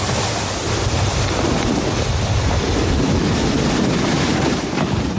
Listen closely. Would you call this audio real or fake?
real